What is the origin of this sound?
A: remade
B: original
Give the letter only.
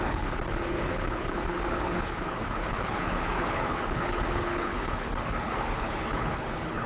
A